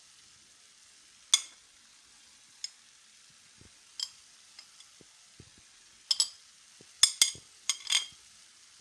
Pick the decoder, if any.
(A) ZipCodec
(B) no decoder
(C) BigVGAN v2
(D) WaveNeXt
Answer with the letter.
B